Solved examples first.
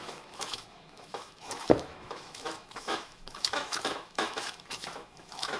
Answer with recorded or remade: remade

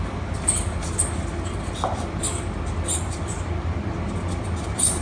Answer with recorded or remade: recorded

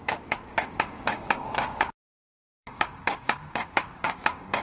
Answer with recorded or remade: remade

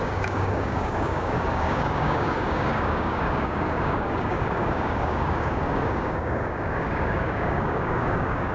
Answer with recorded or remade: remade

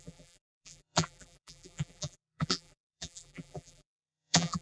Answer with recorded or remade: remade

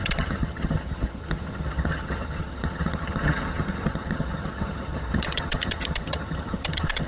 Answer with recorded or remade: remade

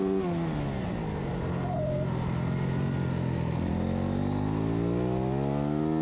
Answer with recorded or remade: recorded